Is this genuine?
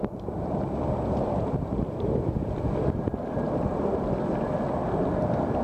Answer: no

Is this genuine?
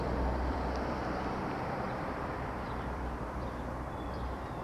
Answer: no